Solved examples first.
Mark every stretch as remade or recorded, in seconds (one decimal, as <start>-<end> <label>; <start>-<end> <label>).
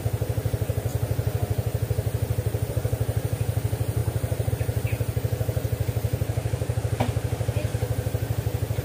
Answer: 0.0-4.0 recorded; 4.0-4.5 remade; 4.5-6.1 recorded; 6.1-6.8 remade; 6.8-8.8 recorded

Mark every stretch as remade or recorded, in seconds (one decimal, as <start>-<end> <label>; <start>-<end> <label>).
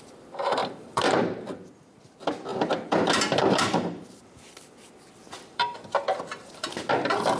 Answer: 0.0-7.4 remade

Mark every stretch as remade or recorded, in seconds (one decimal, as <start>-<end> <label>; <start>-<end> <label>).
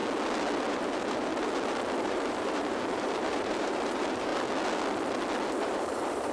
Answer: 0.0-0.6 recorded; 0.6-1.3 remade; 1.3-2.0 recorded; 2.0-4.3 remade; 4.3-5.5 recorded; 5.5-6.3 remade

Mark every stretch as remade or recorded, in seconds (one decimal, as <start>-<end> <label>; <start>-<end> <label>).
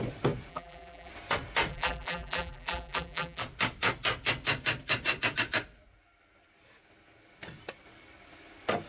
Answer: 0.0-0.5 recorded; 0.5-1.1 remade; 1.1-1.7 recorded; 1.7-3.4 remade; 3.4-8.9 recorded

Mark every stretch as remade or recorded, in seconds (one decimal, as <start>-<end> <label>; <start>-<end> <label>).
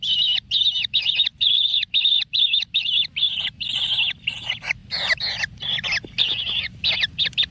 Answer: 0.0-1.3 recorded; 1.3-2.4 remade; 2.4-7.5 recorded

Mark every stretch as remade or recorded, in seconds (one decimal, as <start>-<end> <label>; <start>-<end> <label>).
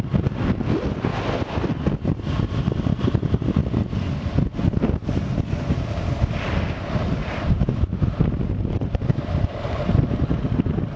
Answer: 0.0-7.2 recorded; 7.2-10.0 remade; 10.0-11.0 recorded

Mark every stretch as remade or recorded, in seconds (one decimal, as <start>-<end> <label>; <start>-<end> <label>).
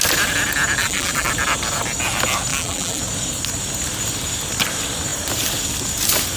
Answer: 0.0-0.8 recorded; 0.8-1.3 remade; 1.3-2.5 recorded; 2.5-3.0 remade; 3.0-6.4 recorded